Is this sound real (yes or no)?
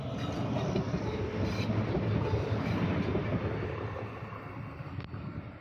yes